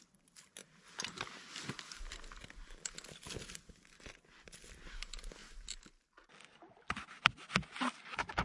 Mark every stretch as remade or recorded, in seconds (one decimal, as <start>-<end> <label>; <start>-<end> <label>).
0.0-8.4 recorded